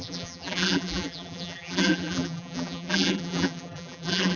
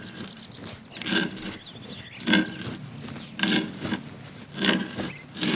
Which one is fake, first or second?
first